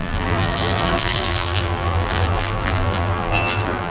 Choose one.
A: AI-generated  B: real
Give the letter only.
A